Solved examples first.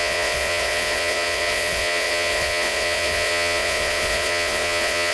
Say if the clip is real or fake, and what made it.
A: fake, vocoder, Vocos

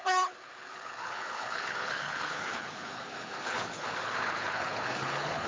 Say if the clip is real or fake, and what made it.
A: fake, codec, HILCodec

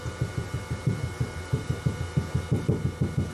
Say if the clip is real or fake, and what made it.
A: real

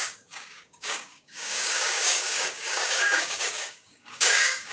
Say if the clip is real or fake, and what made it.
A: fake, codec, DAC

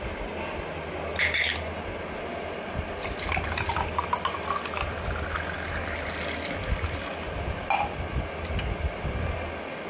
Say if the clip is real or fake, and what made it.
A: real